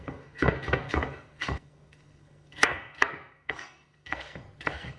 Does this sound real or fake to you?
fake